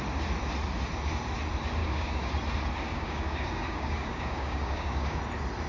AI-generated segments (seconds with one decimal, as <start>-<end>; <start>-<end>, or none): 1.8-2.3; 2.9-5.2